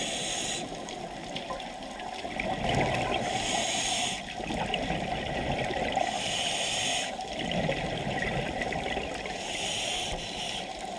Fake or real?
real